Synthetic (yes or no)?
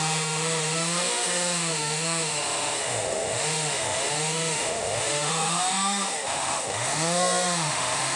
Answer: yes